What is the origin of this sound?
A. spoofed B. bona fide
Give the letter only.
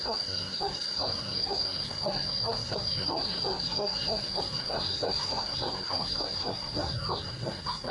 A